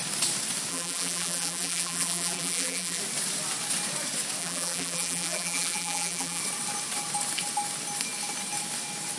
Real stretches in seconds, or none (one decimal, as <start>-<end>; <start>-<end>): 0.0-0.7; 3.0-4.4; 6.4-9.2